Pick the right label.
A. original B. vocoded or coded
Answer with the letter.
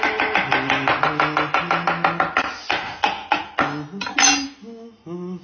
A